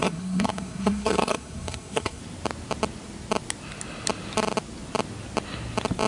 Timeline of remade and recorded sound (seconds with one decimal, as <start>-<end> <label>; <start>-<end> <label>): 0.0-2.2 remade; 2.2-6.1 recorded